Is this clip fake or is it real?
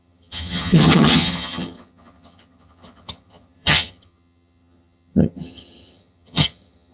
fake